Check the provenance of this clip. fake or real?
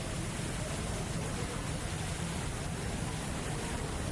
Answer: real